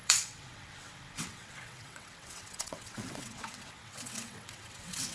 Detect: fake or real fake